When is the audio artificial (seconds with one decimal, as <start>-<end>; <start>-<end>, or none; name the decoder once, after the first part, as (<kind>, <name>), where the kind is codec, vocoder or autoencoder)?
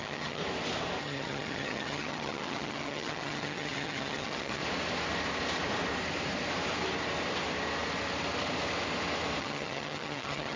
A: 0.0-0.4 (vocoder, HiFi-GAN); 1.0-4.6; 9.4-10.6